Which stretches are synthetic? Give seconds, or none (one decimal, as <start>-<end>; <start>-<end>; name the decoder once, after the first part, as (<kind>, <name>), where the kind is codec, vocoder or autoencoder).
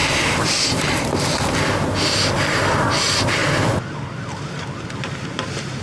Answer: 2.4-3.4 (vocoder, BigVGAN v2); 5.0-5.8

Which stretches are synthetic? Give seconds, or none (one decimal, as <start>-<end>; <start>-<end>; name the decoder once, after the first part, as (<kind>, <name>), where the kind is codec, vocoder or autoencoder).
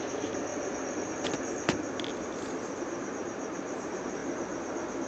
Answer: 0.0-0.5 (vocoder, BigVGAN v2); 2.8-4.2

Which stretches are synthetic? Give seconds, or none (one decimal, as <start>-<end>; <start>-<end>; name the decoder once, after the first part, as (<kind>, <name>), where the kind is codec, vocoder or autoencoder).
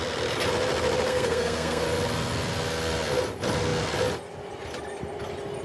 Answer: 1.1-1.8 (codec, SNAC)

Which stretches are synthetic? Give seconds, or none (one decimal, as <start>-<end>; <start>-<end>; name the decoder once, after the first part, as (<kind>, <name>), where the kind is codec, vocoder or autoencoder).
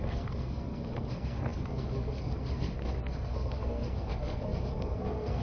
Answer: 0.0-5.4 (codec, SNAC)